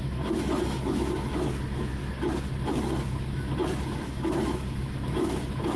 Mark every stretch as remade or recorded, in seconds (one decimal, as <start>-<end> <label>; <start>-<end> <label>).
0.0-2.0 remade; 2.0-3.8 recorded; 3.8-5.8 remade